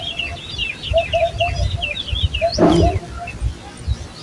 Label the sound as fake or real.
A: real